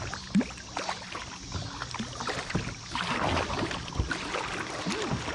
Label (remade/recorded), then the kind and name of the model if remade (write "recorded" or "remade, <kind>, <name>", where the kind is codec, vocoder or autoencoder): recorded